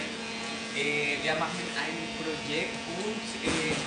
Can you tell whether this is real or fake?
fake